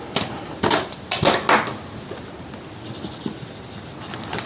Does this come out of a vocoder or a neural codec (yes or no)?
no